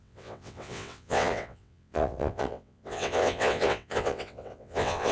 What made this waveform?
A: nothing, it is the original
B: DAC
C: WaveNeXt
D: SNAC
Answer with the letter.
C